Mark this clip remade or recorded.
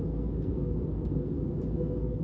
remade